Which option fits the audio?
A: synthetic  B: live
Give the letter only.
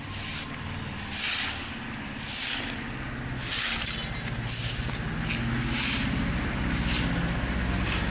B